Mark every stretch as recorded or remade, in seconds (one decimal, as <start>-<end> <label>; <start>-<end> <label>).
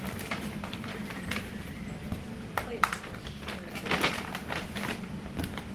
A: 0.0-0.9 remade; 0.9-1.4 recorded; 1.4-2.0 remade; 2.0-5.7 recorded